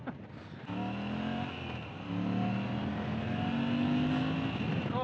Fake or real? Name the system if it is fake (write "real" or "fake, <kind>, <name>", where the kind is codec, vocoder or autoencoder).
real